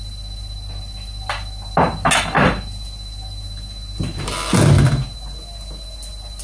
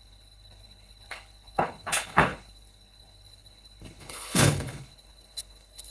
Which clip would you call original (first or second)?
first